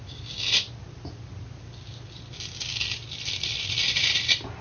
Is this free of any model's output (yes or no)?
yes